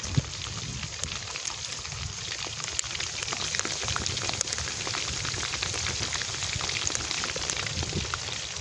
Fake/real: real